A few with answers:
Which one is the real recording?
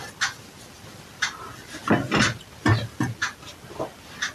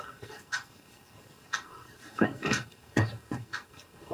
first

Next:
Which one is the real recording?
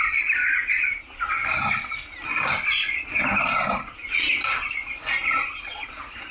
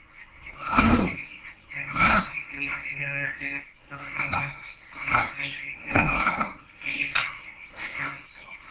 first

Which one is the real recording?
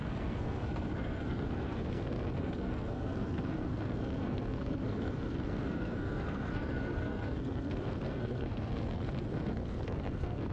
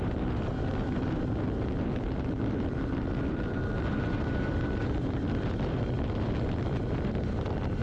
second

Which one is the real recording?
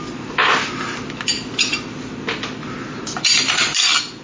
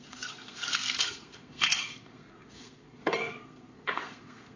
first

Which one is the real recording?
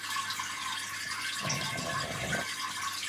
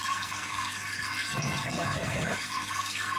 first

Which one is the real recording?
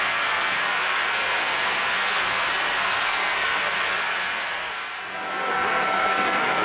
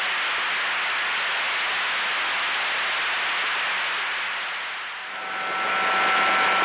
second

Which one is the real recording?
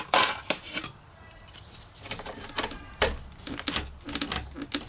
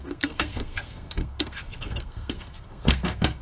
first